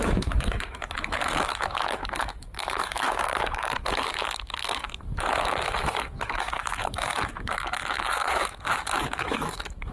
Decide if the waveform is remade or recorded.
remade